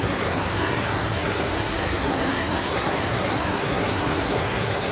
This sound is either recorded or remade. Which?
remade